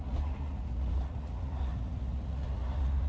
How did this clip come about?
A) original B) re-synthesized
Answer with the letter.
B